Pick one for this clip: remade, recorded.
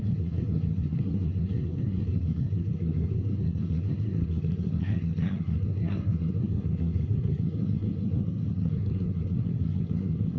remade